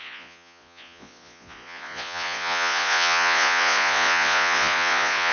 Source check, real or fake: fake